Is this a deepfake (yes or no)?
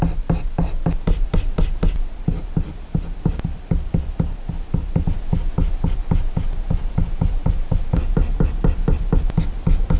no